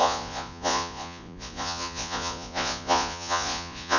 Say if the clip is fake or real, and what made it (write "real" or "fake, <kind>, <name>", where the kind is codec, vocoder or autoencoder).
fake, vocoder, Vocos